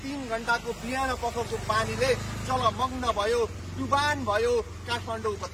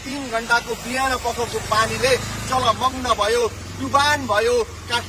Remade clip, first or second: second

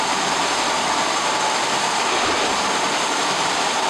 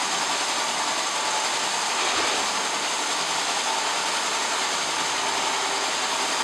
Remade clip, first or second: first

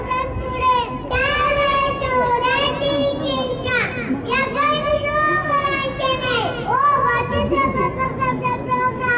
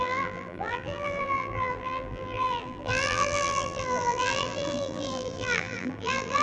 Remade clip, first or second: second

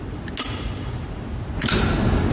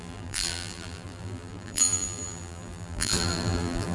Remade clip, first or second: second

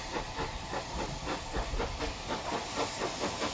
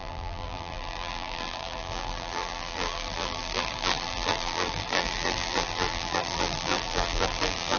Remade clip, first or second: second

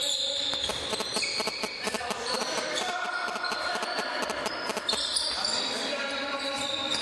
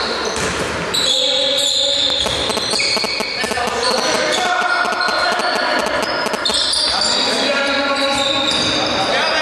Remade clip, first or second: first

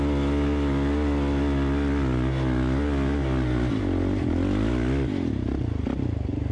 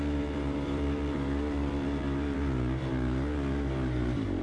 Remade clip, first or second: second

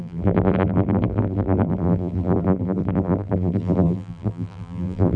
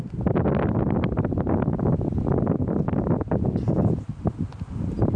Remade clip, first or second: first